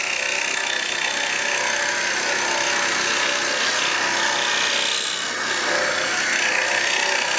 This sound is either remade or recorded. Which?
recorded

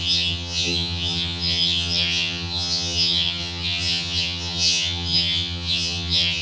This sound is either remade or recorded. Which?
remade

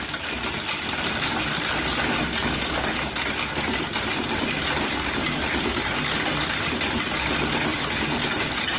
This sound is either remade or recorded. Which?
recorded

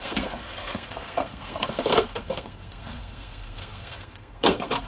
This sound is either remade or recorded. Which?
remade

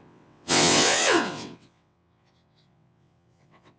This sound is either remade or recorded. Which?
remade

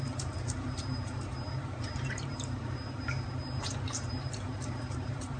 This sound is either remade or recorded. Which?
remade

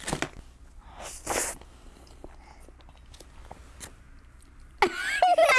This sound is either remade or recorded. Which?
recorded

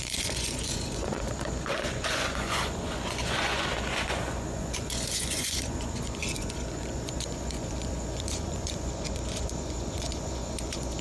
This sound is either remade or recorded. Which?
remade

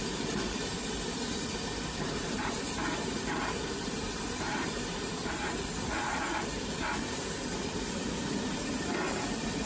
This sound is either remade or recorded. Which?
remade